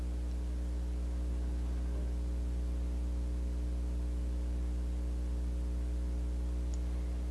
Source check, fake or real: real